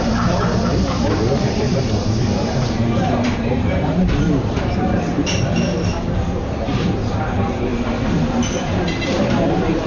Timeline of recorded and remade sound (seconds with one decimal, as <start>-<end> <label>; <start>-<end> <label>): 0.0-7.7 remade; 7.7-8.5 recorded; 8.5-9.9 remade